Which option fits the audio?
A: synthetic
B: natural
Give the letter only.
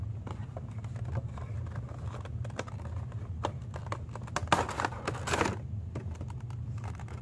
B